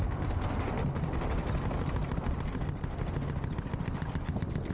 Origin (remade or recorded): recorded